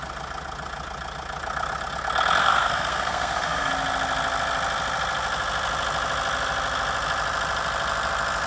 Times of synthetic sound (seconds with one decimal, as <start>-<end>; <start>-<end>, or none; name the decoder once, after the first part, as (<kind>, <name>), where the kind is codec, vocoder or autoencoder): 2.4-3.7 (codec, SNAC)